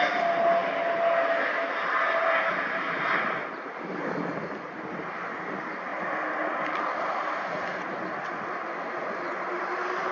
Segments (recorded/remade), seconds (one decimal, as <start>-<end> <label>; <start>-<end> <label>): 0.0-10.1 recorded